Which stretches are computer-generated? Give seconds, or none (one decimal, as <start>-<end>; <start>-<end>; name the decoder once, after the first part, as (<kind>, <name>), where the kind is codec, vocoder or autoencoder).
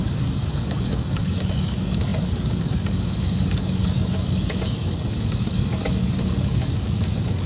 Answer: 0.0-7.5 (codec, DAC)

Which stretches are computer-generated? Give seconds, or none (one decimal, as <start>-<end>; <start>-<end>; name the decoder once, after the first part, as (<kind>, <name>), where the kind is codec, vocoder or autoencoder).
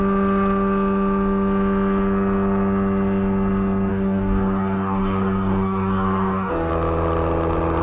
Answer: 3.9-6.7 (codec, DAC)